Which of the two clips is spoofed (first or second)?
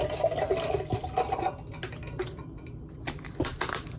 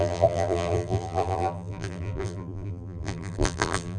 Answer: second